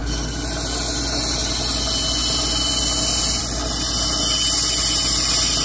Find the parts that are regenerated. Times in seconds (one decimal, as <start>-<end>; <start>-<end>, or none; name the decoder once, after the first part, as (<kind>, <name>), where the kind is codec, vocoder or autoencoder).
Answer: none